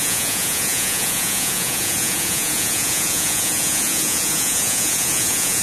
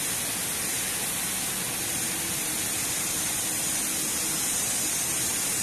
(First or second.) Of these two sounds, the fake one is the first